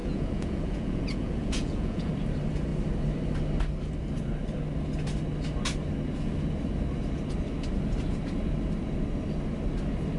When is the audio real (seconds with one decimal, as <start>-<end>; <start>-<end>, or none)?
2.1-10.2